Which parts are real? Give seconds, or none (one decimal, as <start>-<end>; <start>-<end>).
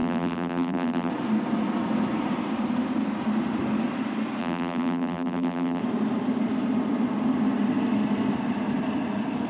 1.1-4.4; 5.8-9.5